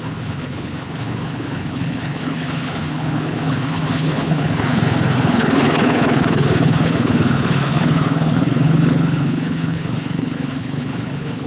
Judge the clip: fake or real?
fake